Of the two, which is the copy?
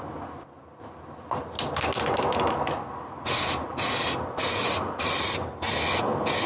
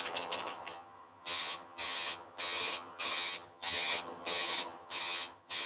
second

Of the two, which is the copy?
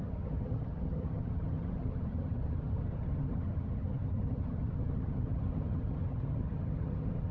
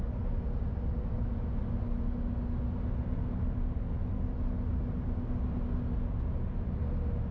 first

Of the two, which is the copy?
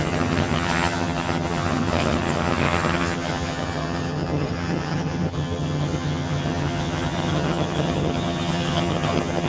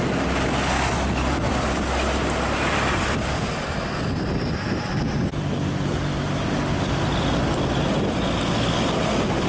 first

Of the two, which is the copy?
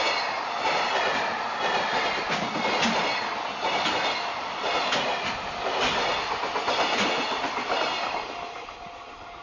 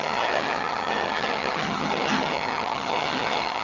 second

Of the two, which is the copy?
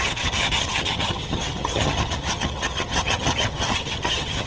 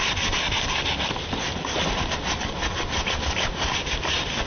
first